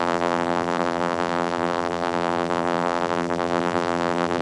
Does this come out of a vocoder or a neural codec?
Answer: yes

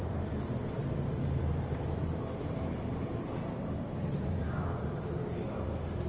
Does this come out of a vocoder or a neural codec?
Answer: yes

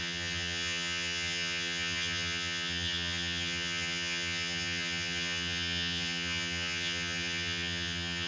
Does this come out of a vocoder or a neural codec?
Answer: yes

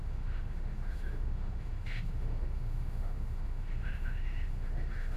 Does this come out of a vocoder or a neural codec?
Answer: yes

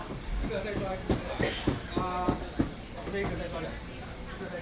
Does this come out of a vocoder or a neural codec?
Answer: no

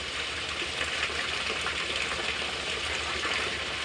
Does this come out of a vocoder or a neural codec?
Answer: no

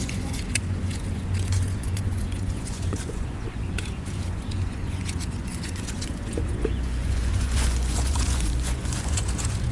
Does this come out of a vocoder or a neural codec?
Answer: yes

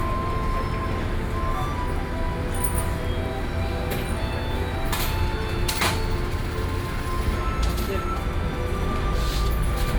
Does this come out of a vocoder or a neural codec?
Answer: no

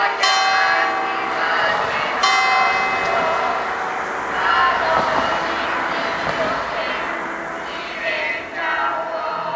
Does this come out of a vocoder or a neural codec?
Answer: no